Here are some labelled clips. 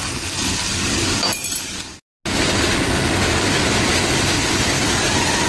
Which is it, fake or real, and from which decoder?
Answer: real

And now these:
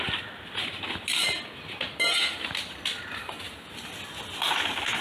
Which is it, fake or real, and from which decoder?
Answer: real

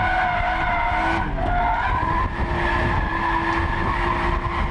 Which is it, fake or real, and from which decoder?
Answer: real